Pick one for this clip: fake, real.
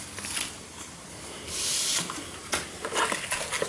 real